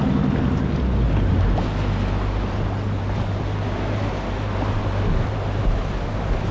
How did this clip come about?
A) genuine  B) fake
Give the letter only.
A